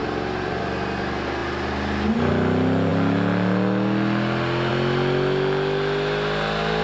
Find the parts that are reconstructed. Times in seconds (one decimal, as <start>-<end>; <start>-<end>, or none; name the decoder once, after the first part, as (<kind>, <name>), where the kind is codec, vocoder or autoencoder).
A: 0.0-0.6 (vocoder, BigVGAN v2)

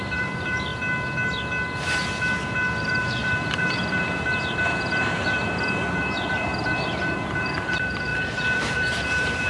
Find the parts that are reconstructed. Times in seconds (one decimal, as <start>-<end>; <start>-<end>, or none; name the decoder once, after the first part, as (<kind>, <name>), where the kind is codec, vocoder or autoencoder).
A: 0.0-0.7 (vocoder, BigVGAN v2); 2.8-9.5

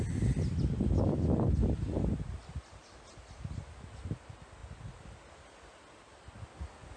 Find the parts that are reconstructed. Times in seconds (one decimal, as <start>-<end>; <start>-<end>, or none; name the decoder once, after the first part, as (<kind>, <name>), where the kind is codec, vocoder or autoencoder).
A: none

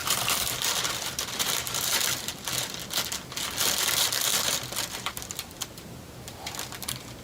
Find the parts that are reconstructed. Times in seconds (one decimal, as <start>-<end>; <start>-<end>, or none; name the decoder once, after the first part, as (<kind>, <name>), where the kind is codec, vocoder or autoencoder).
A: 0.0-2.3 (vocoder, BigVGAN v2); 4.3-5.8

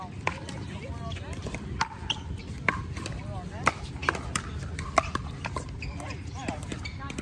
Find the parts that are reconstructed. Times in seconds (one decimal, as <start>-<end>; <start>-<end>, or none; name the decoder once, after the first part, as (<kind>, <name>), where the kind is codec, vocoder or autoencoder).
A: 0.4-2.4 (vocoder, BigVGAN v2)

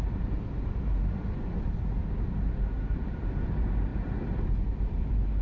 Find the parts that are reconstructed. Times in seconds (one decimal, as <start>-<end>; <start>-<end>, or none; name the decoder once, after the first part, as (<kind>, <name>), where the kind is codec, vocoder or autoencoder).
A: 0.0-2.0 (vocoder, BigVGAN v2); 2.9-5.4

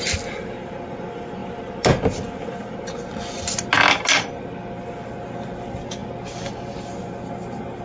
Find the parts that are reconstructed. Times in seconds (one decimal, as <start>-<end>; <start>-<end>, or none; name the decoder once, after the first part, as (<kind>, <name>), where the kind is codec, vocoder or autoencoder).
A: none